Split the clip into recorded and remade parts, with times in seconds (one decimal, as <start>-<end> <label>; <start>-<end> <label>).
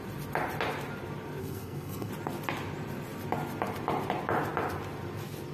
0.0-1.4 recorded; 1.4-2.1 remade; 2.1-5.5 recorded